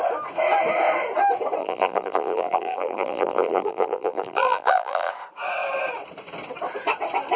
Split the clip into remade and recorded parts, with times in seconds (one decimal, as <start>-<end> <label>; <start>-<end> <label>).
0.0-1.6 recorded; 1.6-5.1 remade; 5.1-7.4 recorded